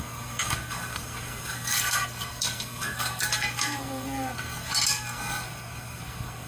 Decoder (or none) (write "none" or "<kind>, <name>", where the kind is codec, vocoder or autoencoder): codec, SNAC